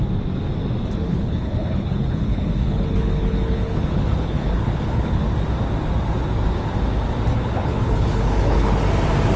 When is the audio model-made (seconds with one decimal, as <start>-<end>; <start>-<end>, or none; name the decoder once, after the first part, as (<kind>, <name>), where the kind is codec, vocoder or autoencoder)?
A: 1.1-5.2 (codec, HILCodec); 7.3-8.8